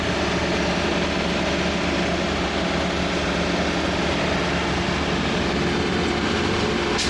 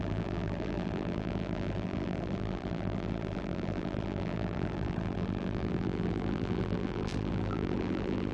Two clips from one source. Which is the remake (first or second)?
second